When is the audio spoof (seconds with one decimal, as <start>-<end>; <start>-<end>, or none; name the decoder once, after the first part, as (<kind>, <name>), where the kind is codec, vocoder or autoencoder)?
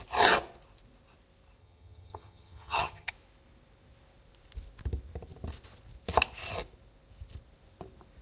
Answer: 1.6-3.1 (vocoder, HiFi-GAN)